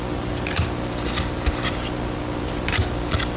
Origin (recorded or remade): recorded